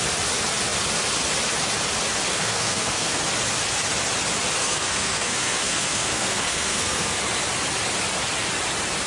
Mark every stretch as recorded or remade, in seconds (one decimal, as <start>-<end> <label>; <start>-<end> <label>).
0.0-2.3 recorded; 2.3-3.2 remade; 3.2-4.6 recorded; 4.6-7.2 remade; 7.2-9.1 recorded